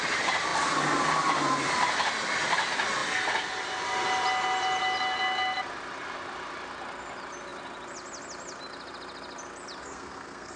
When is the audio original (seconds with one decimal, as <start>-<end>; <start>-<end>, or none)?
0.0-9.8